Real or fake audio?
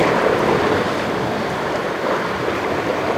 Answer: real